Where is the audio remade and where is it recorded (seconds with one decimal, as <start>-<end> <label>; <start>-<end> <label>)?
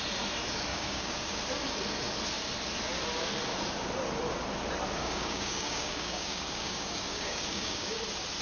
0.0-0.7 recorded; 0.7-1.4 remade; 1.4-5.0 recorded; 5.0-8.0 remade; 8.0-8.4 recorded